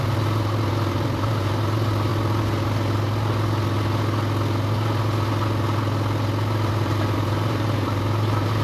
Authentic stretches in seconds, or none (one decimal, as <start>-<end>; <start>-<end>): 2.1-6.7